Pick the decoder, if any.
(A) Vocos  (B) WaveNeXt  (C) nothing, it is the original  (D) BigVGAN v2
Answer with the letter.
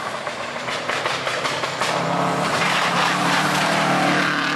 D